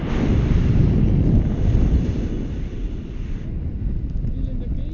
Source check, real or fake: real